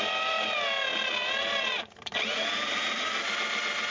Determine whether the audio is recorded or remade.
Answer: recorded